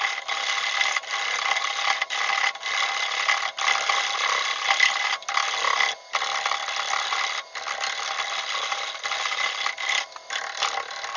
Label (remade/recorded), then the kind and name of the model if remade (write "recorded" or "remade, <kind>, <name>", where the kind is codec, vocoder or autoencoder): recorded